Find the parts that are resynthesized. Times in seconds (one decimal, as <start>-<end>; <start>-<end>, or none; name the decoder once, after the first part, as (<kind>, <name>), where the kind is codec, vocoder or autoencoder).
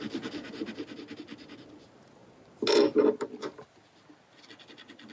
none